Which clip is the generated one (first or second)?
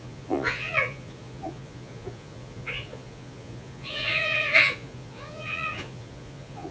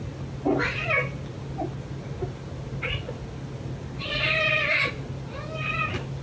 first